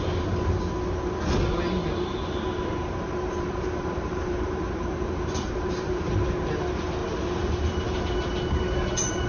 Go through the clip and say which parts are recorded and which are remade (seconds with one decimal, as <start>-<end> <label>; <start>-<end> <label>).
0.0-2.8 recorded; 2.8-5.9 remade; 5.9-7.0 recorded; 7.0-8.0 remade; 8.0-9.3 recorded

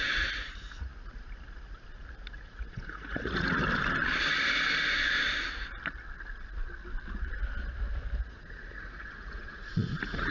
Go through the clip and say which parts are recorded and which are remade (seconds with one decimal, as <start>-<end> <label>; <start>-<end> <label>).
0.0-0.9 remade; 0.9-2.4 recorded; 2.4-3.6 remade; 3.6-8.3 recorded; 8.3-10.3 remade

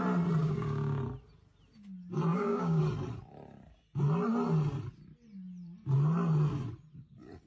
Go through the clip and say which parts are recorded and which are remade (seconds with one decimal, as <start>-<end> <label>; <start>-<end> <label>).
0.0-0.4 recorded; 0.4-1.0 remade; 1.0-2.3 recorded; 2.3-2.8 remade; 2.8-7.5 recorded

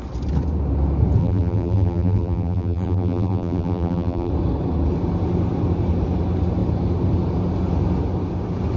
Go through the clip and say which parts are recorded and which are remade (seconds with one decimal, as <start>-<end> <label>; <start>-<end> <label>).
0.0-1.2 recorded; 1.2-4.3 remade; 4.3-8.8 recorded

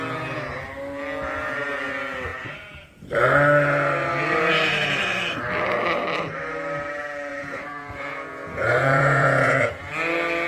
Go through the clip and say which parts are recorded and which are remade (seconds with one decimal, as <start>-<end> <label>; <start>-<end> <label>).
0.0-2.3 recorded; 2.3-3.0 remade; 3.0-7.3 recorded; 7.3-9.9 remade; 9.9-10.5 recorded

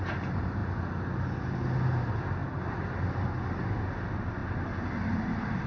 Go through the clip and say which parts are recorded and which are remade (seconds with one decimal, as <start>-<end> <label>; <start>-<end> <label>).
0.0-5.7 recorded